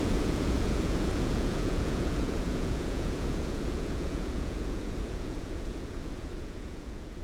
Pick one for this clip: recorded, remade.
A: remade